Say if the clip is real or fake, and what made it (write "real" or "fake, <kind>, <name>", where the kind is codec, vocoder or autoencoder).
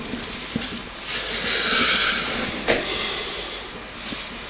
real